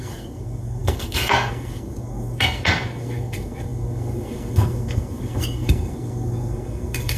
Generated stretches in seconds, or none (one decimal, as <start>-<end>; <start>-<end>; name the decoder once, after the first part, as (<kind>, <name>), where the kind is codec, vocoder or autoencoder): 0.0-7.2 (codec, SNAC)